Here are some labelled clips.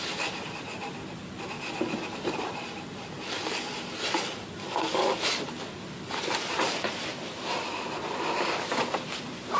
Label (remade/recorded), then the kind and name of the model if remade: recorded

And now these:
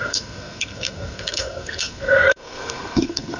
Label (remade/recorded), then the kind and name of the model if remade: remade, codec, SNAC